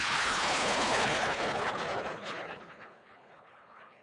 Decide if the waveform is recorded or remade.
remade